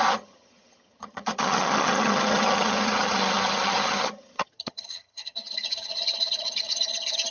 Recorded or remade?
remade